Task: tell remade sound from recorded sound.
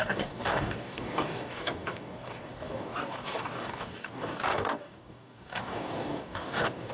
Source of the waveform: remade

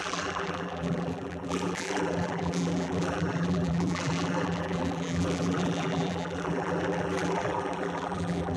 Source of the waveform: remade